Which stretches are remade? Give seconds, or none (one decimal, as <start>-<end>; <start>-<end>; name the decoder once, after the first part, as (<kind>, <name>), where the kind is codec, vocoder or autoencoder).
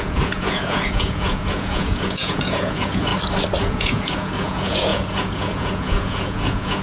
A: 0.0-3.1 (vocoder, Vocos); 3.6-6.8